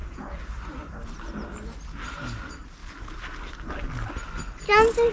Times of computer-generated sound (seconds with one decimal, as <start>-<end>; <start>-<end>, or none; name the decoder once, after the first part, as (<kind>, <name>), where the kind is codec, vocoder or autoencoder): 0.0-0.5 (vocoder, Vocos)